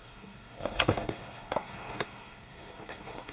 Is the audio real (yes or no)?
no